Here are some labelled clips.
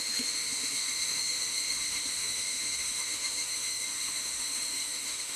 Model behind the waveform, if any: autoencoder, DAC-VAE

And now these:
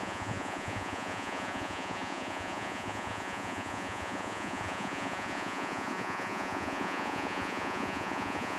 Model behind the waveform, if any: vocoder, Vocos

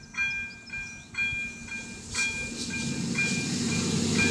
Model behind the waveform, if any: none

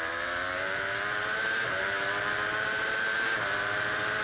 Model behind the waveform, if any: vocoder, BigVGAN v2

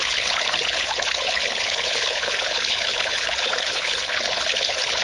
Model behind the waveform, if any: codec, HILCodec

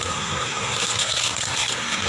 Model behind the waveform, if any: codec, SNAC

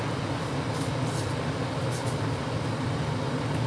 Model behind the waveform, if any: none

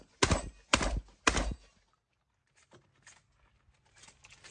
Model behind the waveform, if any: none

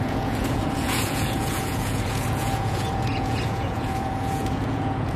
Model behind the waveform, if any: vocoder, Vocos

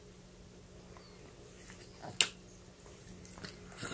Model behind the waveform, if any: none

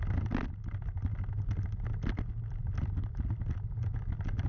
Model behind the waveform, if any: none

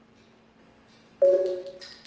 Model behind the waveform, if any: none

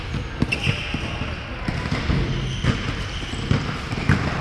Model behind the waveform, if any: none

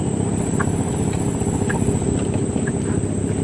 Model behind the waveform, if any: none